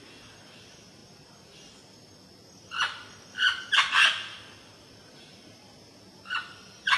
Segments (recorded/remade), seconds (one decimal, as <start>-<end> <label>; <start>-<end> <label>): 0.0-7.0 recorded